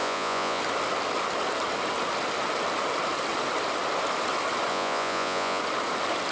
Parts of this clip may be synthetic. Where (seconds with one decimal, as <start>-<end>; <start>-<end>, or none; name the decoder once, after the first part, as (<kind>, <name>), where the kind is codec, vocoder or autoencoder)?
0.0-0.6 (vocoder, Vocos); 4.7-5.6